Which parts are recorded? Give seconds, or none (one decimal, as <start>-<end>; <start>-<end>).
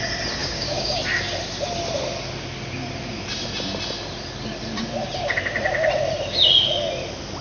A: 0.0-0.4; 1.0-7.4